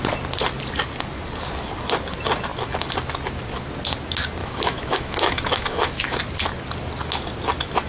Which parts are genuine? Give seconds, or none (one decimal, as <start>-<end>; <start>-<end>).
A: 0.0-4.4; 6.2-7.9